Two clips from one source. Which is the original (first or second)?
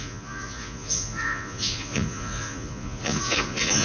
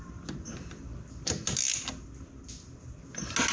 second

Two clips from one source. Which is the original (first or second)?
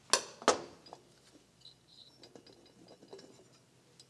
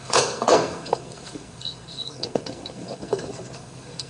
first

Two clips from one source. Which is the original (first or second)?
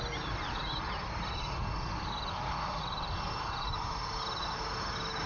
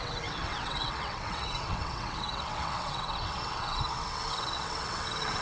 first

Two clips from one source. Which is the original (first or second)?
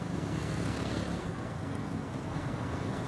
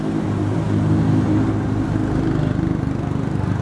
second